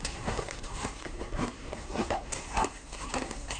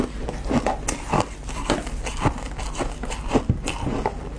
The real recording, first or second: second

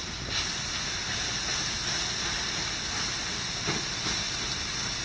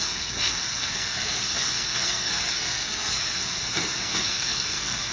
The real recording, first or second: first